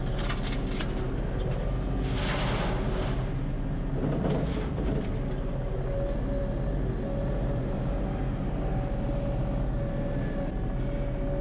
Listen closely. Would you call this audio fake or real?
real